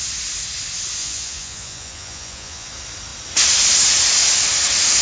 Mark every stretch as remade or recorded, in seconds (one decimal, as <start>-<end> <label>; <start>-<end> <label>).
0.0-1.0 recorded; 1.0-2.7 remade; 2.7-5.0 recorded